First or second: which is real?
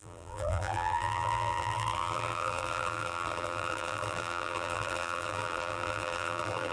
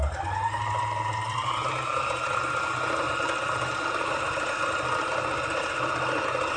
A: second